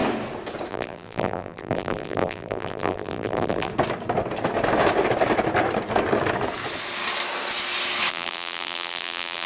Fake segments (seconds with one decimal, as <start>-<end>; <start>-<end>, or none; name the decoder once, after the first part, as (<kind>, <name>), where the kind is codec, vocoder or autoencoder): 0.7-3.7 (vocoder, BigVGAN v2); 8.1-9.5